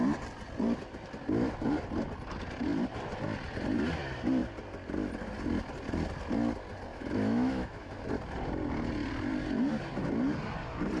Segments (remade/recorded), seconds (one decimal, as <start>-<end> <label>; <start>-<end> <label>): 0.0-6.9 recorded; 6.9-8.1 remade; 8.1-11.0 recorded